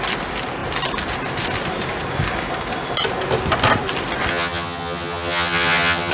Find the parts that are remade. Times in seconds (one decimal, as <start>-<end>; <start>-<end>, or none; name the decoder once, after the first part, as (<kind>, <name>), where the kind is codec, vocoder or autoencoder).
4.3-6.1 (vocoder, HiFi-GAN)